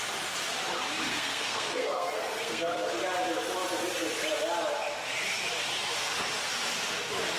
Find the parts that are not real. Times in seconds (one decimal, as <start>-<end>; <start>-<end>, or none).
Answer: 1.1-2.9